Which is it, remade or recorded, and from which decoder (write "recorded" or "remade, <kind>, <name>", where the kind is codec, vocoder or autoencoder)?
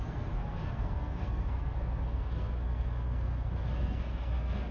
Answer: remade, codec, SNAC